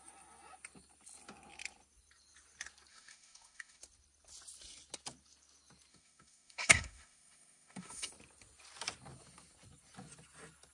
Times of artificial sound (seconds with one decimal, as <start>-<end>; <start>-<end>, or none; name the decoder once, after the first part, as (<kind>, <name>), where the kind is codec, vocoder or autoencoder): 2.9-3.8 (autoencoder, DAC-VAE); 5.9-8.1